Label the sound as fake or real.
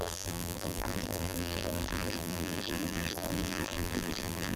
fake